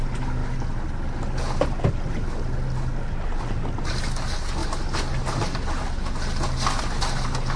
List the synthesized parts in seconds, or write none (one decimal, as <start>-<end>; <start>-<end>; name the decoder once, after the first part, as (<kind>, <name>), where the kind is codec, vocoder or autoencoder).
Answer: none